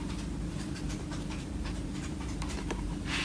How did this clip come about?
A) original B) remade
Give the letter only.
B